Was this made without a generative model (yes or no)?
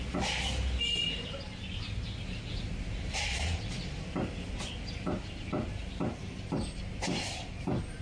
yes